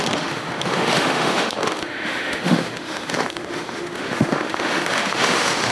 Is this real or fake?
fake